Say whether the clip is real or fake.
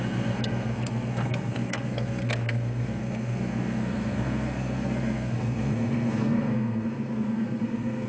fake